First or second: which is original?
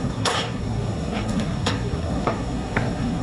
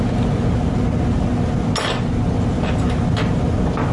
second